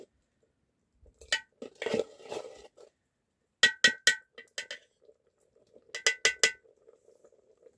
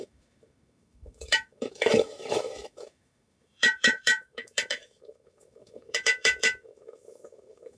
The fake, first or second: second